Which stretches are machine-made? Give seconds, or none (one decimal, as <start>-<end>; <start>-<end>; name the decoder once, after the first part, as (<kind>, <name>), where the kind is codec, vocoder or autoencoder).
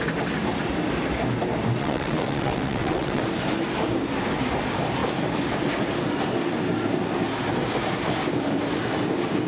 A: 1.8-3.2 (vocoder, WaveNeXt)